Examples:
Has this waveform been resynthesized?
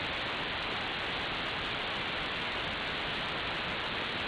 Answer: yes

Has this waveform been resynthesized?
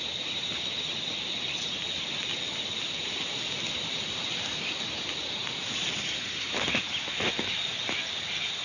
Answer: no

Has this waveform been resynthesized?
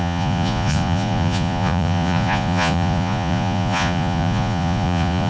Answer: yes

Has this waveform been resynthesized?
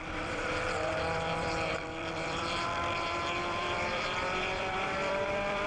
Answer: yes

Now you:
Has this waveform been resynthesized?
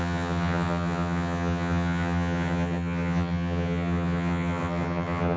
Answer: yes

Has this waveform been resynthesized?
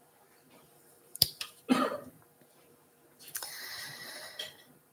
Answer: yes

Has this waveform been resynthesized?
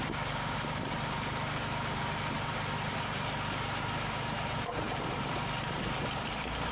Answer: yes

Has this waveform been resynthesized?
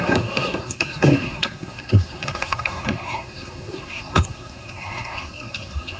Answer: yes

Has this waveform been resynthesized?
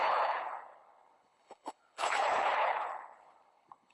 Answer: yes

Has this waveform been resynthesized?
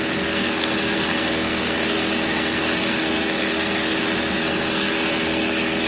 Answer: yes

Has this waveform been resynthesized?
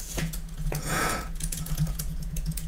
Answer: yes